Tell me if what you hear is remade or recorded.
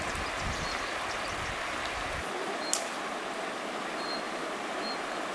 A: recorded